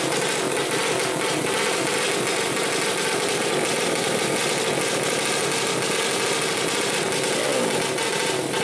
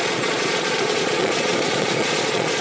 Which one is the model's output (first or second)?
second